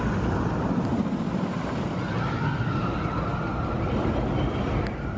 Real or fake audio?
real